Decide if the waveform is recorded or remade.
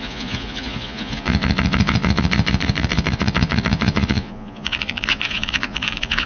remade